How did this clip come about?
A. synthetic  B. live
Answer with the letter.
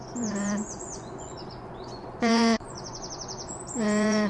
A